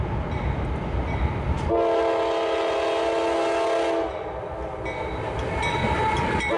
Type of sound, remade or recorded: recorded